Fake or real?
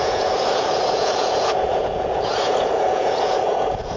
fake